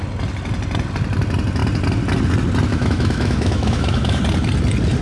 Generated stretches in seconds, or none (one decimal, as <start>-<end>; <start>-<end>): 2.7-4.2